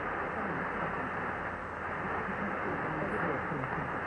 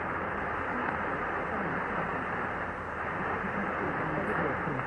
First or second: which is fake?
second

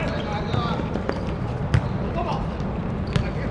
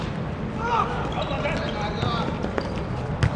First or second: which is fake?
first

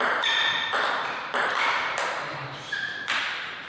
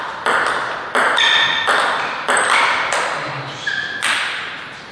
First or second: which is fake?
first